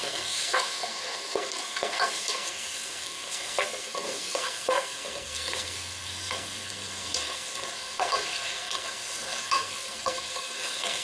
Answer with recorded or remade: remade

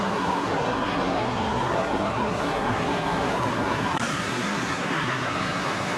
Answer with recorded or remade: remade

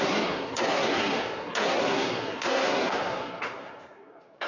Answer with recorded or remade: remade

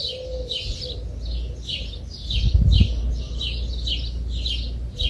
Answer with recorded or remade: recorded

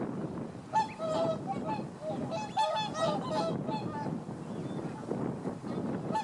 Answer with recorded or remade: recorded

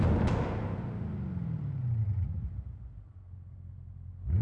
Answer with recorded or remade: recorded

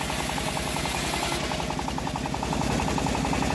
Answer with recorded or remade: recorded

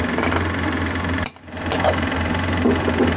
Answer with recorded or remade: recorded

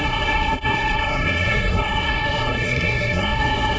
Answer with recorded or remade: remade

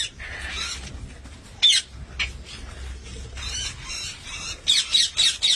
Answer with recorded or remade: recorded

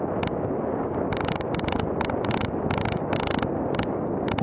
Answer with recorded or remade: recorded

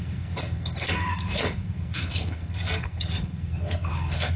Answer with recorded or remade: remade